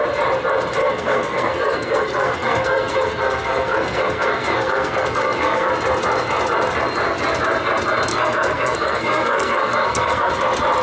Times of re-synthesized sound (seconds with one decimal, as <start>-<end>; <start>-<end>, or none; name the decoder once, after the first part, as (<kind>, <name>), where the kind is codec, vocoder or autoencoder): 0.8-5.7 (codec, SNAC); 8.1-10.3